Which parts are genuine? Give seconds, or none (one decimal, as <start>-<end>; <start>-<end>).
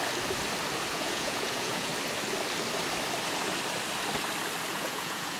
0.0-0.9; 1.9-4.7